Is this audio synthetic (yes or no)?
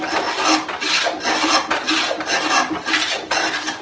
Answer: no